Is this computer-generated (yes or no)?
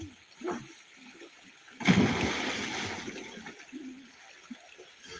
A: no